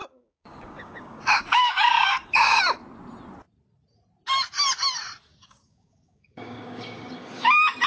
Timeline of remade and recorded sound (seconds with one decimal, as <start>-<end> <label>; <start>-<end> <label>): 0.0-2.6 remade; 2.6-5.3 recorded; 5.3-7.5 remade; 7.5-7.9 recorded